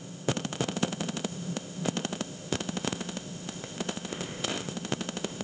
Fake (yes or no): yes